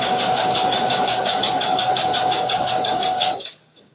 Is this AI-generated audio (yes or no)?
yes